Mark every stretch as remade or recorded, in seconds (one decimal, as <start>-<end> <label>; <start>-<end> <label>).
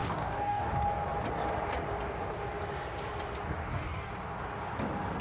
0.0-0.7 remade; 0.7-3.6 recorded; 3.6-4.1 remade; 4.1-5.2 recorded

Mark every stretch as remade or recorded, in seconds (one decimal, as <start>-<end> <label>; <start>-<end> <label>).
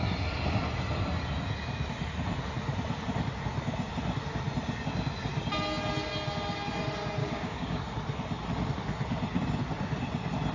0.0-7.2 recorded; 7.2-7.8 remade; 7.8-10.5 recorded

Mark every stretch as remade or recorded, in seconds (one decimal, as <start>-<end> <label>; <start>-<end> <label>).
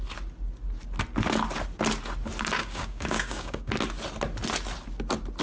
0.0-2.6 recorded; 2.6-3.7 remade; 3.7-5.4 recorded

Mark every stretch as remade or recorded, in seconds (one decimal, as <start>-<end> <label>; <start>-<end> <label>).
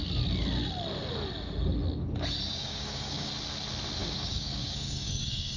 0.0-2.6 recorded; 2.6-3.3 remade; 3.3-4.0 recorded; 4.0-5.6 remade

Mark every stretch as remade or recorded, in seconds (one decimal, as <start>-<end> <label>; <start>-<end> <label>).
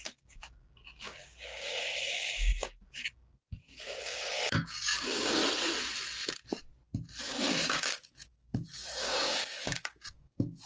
0.0-5.4 remade; 5.4-7.4 recorded; 7.4-10.7 remade